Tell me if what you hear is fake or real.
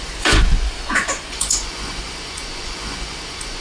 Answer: fake